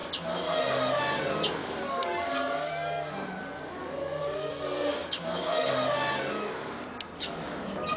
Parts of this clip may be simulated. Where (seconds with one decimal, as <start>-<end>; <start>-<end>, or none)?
1.6-2.7; 3.8-4.5; 5.0-5.7